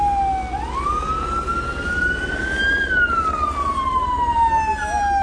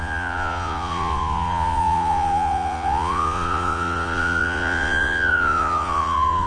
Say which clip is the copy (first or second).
second